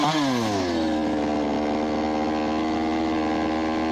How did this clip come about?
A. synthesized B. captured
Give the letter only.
B